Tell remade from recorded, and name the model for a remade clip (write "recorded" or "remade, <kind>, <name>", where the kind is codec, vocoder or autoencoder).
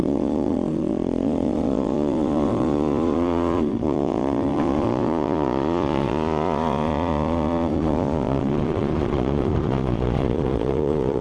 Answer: remade, vocoder, Vocos